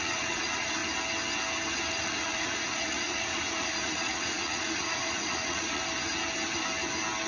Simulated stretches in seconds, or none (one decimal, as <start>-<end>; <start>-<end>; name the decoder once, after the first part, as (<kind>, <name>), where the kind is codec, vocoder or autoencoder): 0.0-0.8 (vocoder, Vocos); 1.9-5.8